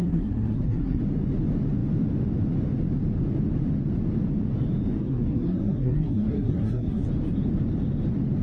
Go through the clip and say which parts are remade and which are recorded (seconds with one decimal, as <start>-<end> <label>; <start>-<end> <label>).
0.0-1.0 remade; 1.0-5.0 recorded; 5.0-7.0 remade; 7.0-8.4 recorded

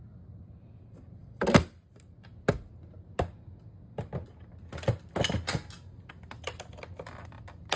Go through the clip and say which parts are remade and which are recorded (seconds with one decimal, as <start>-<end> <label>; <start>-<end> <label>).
0.0-7.8 recorded

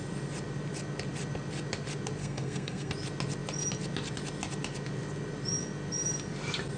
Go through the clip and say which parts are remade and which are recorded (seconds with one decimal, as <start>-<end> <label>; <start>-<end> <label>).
0.0-2.2 recorded; 2.2-2.9 remade; 2.9-6.8 recorded